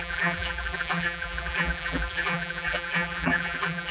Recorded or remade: remade